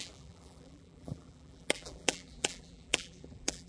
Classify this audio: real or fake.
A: fake